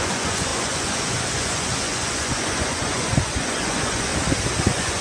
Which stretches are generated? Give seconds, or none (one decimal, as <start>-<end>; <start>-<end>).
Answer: 0.0-4.1; 4.6-5.0